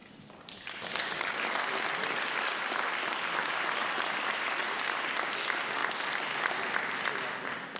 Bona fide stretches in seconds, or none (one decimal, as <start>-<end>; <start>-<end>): 1.1-7.8